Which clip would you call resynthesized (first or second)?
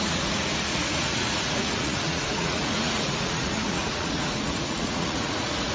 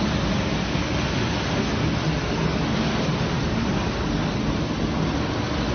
first